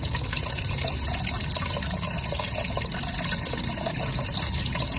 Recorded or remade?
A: recorded